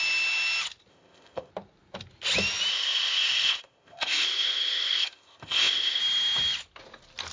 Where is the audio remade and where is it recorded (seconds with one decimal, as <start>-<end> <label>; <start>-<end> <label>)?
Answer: 0.0-0.9 recorded; 0.9-1.5 remade; 1.5-2.7 recorded; 2.7-6.0 remade; 6.0-7.3 recorded